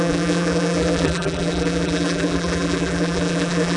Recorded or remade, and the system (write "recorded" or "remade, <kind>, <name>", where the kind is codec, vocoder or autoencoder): remade, vocoder, BigVGAN v2